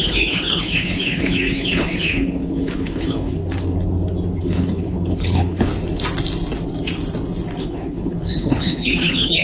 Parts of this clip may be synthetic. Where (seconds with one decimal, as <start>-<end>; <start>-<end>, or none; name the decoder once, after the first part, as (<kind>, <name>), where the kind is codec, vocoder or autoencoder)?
0.0-3.4 (codec, HILCodec); 4.4-5.7; 7.6-9.4